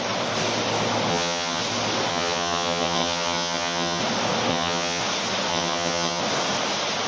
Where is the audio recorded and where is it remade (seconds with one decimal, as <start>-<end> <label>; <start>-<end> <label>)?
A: 0.0-1.1 recorded; 1.1-1.6 remade; 1.6-2.1 recorded; 2.1-4.0 remade; 4.0-4.5 recorded; 4.5-5.0 remade; 5.0-5.5 recorded; 5.5-6.2 remade; 6.2-7.1 recorded